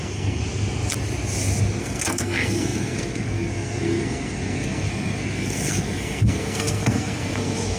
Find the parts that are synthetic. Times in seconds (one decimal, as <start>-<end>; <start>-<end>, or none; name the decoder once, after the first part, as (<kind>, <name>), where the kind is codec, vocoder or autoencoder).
0.0-0.4 (codec, SNAC); 1.8-7.8